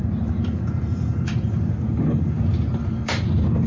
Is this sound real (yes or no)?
no